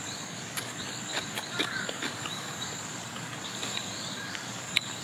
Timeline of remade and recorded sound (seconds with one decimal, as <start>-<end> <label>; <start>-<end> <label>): 0.0-5.0 remade